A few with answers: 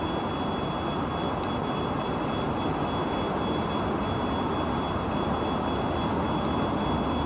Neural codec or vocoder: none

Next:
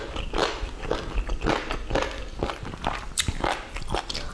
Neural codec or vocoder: none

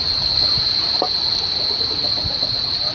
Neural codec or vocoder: none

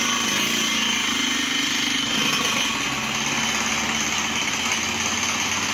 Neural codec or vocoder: none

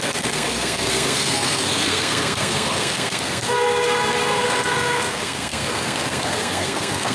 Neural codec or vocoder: codec, SNAC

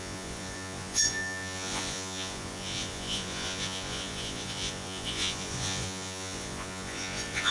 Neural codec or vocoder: vocoder, Vocos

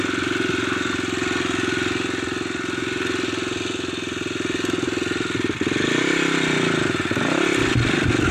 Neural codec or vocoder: none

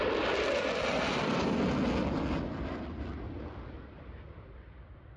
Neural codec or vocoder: none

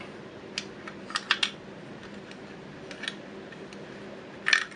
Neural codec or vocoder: none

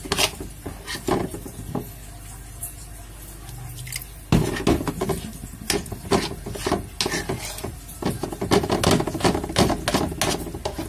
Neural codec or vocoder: none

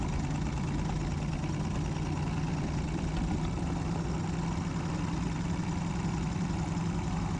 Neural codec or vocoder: none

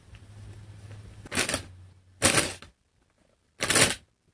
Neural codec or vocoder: none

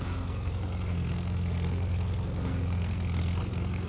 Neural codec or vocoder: codec, SNAC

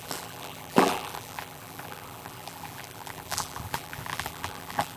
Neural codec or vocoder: vocoder, BigVGAN v2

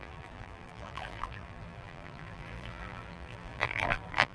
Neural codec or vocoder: vocoder, BigVGAN v2